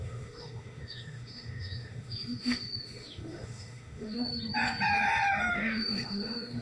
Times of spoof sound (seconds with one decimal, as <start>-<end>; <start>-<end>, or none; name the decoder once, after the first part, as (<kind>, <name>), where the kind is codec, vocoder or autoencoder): 0.0-4.3 (autoencoder, DAC-VAE); 5.5-6.6